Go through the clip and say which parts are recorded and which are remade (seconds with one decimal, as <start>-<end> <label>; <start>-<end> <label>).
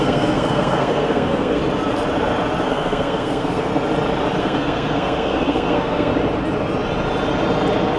0.0-1.6 remade; 1.6-2.7 recorded; 2.7-3.7 remade; 3.7-4.4 recorded; 4.4-6.1 remade; 6.1-8.0 recorded